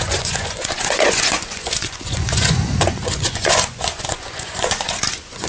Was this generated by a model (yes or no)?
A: yes